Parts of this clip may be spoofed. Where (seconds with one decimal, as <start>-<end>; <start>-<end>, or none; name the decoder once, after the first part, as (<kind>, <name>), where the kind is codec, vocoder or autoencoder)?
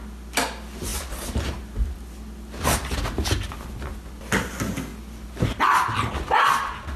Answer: none